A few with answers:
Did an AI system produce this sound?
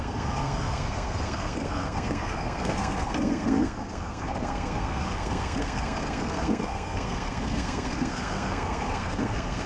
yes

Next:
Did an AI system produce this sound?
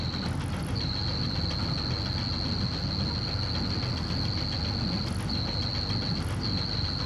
no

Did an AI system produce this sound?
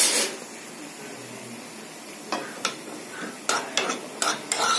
no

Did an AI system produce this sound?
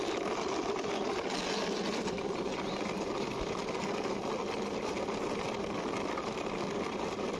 no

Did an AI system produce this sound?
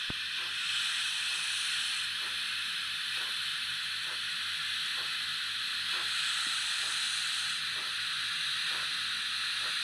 no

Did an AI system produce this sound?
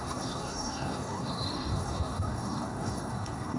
yes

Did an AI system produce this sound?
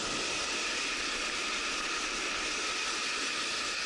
no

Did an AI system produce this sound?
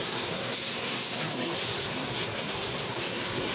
yes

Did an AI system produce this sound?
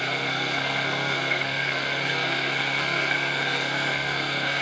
yes